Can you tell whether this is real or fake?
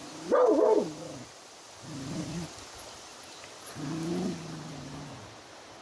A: real